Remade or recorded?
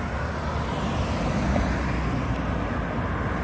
recorded